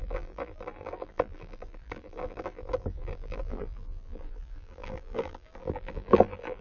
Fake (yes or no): yes